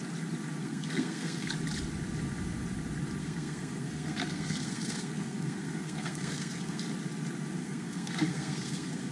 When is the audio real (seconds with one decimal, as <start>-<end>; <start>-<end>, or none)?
0.0-0.6; 1.5-3.2; 6.8-7.6